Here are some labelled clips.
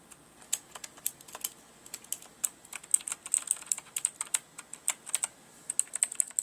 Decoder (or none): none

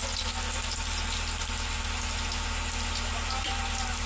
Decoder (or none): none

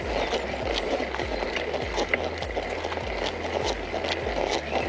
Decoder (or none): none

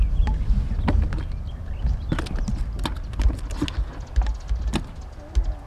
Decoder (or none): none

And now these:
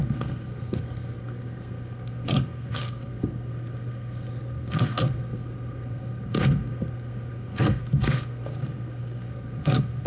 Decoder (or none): codec, SNAC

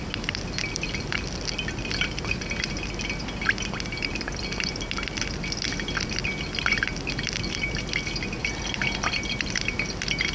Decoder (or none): none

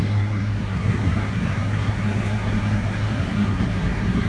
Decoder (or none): codec, SNAC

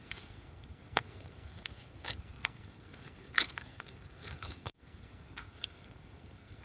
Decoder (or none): codec, SNAC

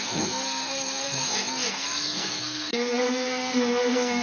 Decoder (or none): codec, SNAC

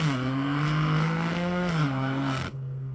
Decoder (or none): codec, SNAC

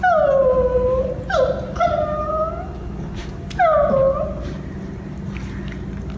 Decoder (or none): none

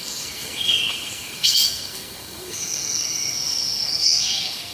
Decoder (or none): codec, SNAC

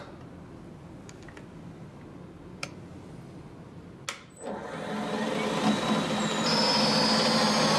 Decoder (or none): none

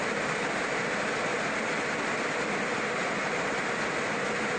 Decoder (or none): none